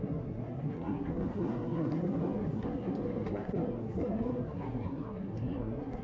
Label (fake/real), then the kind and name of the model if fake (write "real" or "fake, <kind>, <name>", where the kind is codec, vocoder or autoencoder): fake, codec, SNAC